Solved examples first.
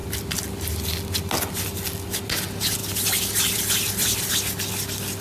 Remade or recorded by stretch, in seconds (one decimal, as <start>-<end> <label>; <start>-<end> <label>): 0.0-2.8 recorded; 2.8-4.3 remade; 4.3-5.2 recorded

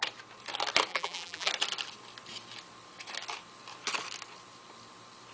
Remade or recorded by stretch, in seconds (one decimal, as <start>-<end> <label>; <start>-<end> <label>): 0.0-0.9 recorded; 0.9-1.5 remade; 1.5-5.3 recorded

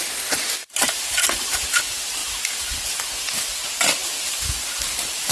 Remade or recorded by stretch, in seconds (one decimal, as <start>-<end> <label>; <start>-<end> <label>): 0.0-0.6 recorded; 0.6-1.8 remade; 1.8-2.2 recorded; 2.2-3.5 remade; 3.5-5.3 recorded

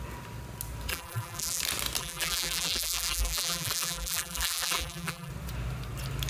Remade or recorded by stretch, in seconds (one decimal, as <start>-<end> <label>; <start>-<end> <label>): 0.0-0.9 recorded; 0.9-1.6 remade; 1.6-2.0 recorded; 2.0-5.3 remade; 5.3-6.3 recorded

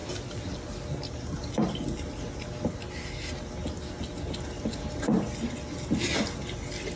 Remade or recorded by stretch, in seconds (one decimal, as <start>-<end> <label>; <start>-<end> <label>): 0.0-7.0 recorded

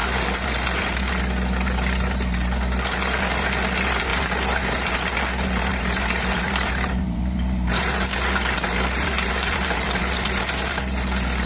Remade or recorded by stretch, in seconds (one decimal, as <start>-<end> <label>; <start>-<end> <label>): 0.0-1.2 remade; 1.2-4.1 recorded; 4.1-4.9 remade; 4.9-5.7 recorded; 5.7-10.3 remade; 10.3-11.5 recorded